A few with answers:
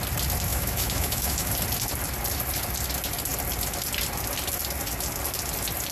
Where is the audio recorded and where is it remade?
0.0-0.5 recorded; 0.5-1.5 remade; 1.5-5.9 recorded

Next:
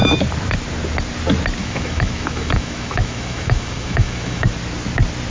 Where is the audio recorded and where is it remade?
0.0-1.6 recorded; 1.6-4.5 remade; 4.5-5.3 recorded

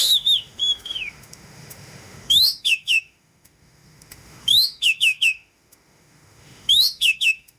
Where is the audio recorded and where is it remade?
0.0-7.6 remade

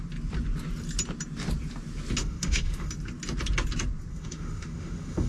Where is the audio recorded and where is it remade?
0.0-2.2 recorded; 2.2-2.9 remade; 2.9-4.1 recorded; 4.1-5.3 remade